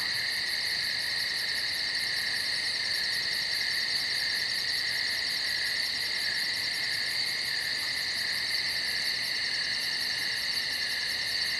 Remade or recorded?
recorded